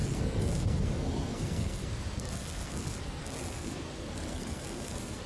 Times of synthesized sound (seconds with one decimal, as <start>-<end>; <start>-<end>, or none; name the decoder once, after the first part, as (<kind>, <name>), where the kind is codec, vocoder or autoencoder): 0.0-5.3 (codec, SNAC)